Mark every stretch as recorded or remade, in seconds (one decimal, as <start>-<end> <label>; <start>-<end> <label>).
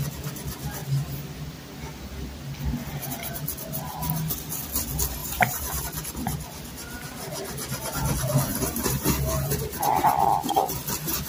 0.0-5.2 recorded; 5.2-5.8 remade; 5.8-8.5 recorded; 8.5-10.2 remade; 10.2-11.3 recorded